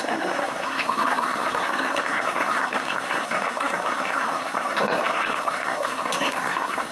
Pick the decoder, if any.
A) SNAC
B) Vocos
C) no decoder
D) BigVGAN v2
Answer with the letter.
A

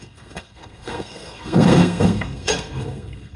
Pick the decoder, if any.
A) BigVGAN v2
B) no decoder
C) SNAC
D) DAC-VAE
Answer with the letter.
C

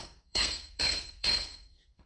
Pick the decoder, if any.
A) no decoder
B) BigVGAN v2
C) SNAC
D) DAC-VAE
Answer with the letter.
C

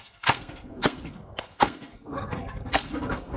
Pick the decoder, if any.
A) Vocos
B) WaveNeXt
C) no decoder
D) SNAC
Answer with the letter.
D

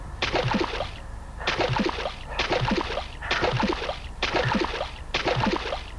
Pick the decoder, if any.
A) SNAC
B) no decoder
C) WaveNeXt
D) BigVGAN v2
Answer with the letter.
B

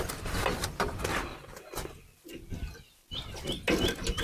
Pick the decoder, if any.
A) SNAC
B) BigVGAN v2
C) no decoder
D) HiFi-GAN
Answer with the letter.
C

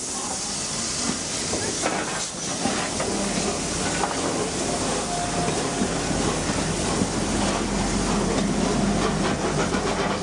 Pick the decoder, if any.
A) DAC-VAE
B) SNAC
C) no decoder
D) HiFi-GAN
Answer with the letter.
C